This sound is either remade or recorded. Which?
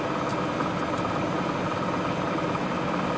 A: recorded